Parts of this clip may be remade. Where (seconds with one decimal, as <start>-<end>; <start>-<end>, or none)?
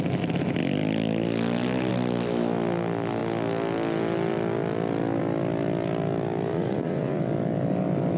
6.5-7.2